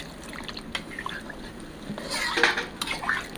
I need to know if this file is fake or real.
real